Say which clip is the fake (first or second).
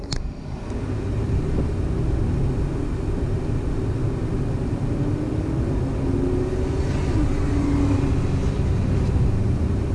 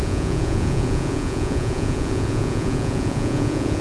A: second